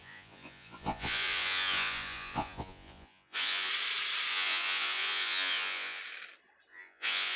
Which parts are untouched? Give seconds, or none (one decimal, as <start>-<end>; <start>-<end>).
3.7-4.3; 6.0-6.7